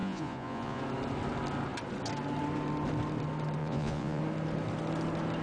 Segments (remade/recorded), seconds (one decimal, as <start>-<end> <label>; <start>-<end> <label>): 0.0-0.8 remade; 0.8-3.6 recorded; 3.6-4.2 remade; 4.2-5.4 recorded